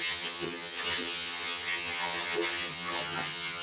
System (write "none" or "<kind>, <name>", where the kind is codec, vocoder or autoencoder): vocoder, HiFi-GAN